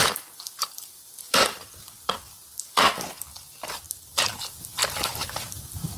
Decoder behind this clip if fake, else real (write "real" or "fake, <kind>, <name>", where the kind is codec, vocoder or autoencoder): fake, vocoder, BigVGAN v2